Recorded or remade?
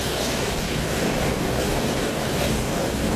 remade